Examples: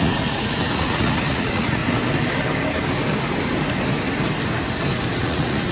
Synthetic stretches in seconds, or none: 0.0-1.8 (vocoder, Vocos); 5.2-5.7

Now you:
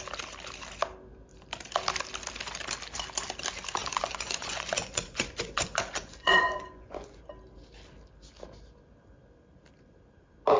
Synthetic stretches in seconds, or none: 3.8-7.2 (vocoder, Vocos)

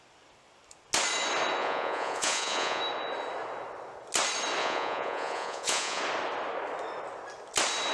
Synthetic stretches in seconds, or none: 1.6-2.8 (vocoder, Vocos); 4.6-6.0

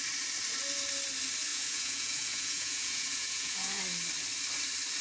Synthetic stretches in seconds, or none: 1.5-3.8 (vocoder, Vocos)

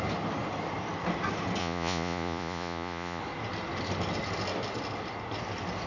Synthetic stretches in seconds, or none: 1.6-3.2 (vocoder, Vocos)

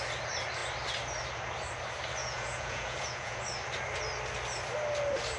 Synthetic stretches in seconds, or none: 2.2-3.4 (vocoder, Vocos)

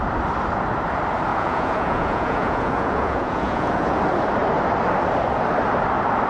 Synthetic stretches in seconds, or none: 1.3-4.0 (vocoder, Vocos)